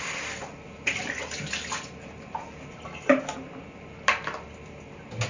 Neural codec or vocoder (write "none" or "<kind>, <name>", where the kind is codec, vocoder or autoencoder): none